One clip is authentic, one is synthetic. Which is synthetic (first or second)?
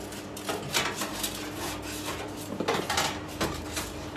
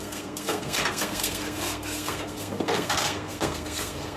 second